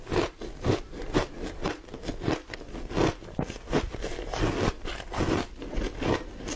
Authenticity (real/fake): real